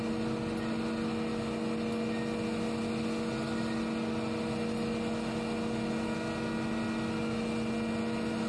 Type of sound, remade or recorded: recorded